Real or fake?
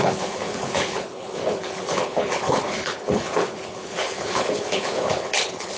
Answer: fake